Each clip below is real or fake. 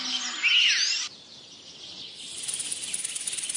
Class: real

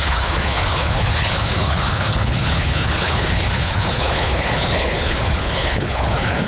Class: fake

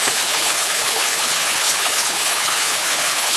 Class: fake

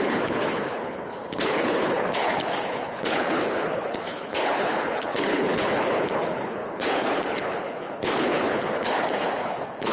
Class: fake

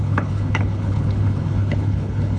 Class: fake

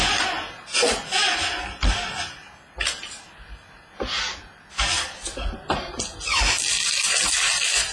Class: real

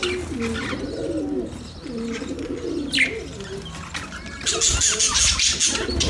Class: real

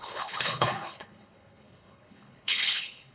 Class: fake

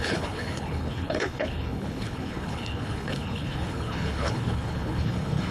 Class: fake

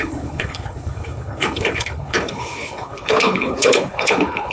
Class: fake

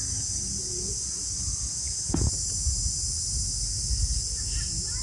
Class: real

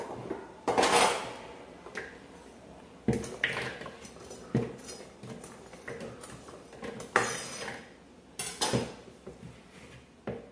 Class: real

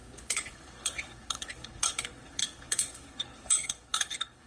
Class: fake